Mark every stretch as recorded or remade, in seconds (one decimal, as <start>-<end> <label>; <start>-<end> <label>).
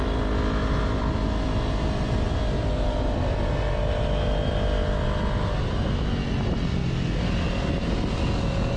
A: 0.0-0.6 recorded; 0.6-1.1 remade; 1.1-8.8 recorded